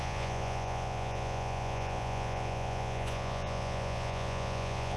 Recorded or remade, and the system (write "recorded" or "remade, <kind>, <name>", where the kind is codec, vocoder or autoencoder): remade, vocoder, Vocos